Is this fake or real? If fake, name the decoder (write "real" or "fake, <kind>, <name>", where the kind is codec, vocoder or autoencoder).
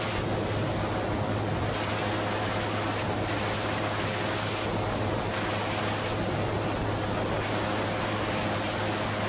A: real